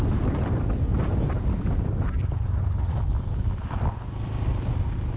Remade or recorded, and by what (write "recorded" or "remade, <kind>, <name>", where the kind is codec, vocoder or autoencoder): recorded